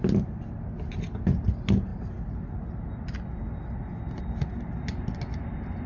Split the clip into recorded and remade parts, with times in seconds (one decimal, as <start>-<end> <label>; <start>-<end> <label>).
0.0-5.9 recorded